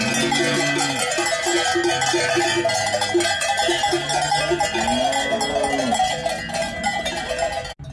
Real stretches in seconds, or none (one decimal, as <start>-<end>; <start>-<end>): 0.0-7.9